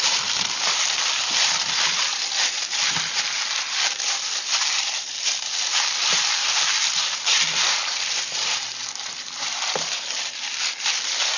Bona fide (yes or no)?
no